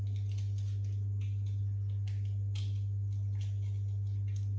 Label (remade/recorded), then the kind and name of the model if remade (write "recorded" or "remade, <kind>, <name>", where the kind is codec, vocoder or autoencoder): recorded